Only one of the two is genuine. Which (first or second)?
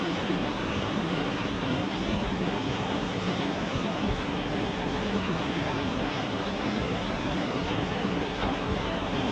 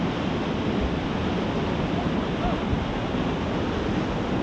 second